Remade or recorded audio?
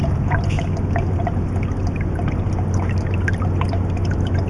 recorded